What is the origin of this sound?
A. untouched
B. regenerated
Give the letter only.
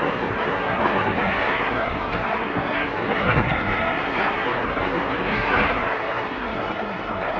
B